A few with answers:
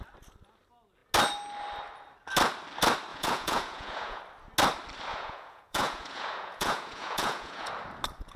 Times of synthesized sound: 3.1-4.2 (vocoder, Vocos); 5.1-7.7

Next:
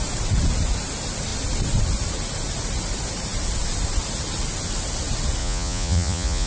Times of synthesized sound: 5.4-6.5 (vocoder, Vocos)

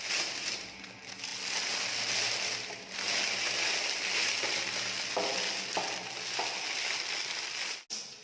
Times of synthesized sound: none

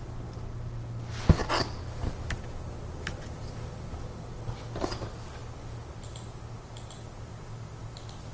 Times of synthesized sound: none

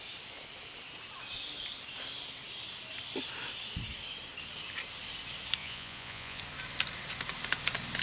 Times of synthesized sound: 5.6-6.4 (vocoder, Vocos)

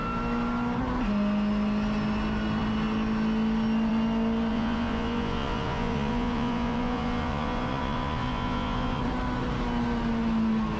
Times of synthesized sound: 4.5-9.0 (vocoder, Vocos)